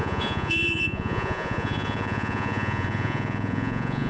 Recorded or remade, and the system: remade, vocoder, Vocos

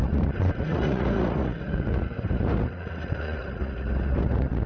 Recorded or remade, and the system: remade, vocoder, Vocos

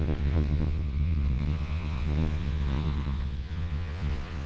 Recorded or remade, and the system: remade, vocoder, Vocos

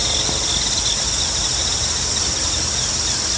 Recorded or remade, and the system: recorded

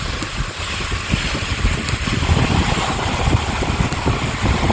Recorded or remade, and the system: recorded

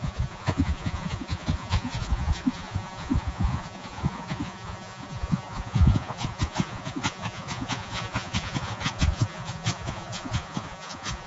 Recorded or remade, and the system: remade, vocoder, Vocos